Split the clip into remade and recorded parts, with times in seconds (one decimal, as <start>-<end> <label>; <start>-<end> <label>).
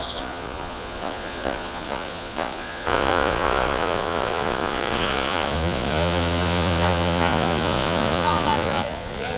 0.0-9.4 remade